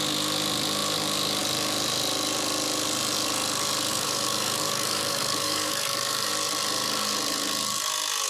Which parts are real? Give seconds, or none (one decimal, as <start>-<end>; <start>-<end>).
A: 0.0-3.9; 6.3-8.3